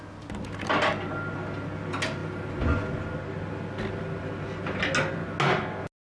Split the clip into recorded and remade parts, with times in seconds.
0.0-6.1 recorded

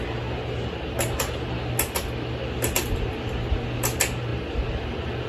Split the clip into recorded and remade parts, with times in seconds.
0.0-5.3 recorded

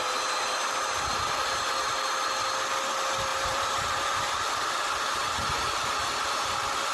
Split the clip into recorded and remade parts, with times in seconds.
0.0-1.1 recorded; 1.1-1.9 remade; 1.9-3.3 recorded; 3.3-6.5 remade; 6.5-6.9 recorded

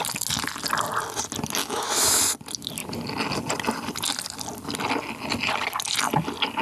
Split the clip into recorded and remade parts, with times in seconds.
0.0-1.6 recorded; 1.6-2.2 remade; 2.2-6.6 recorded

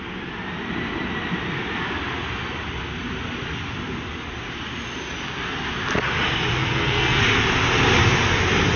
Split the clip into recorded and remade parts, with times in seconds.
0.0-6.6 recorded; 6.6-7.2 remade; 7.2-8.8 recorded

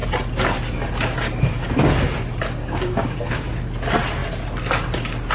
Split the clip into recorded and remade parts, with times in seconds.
0.0-2.6 recorded; 2.6-3.6 remade; 3.6-5.3 recorded

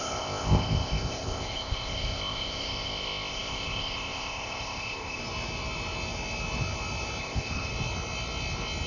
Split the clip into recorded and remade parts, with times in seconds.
0.0-5.2 remade; 5.2-7.2 recorded; 7.2-7.7 remade; 7.7-8.9 recorded